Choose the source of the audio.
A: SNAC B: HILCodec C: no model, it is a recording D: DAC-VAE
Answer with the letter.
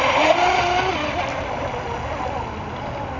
C